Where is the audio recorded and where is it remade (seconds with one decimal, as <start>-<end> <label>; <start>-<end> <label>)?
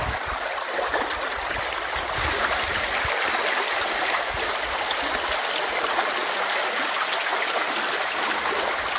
0.0-9.0 recorded